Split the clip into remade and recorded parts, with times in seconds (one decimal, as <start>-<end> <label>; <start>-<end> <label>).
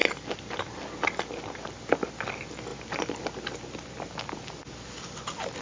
0.0-5.6 recorded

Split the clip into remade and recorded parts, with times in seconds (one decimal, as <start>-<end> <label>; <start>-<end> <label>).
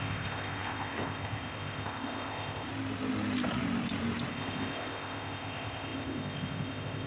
0.0-2.7 remade; 2.7-4.3 recorded; 4.3-7.1 remade